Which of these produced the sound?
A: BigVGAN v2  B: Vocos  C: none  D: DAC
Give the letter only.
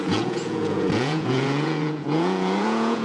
B